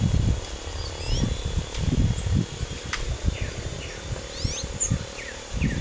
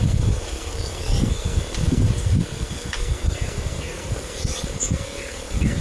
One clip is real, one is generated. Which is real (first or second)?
first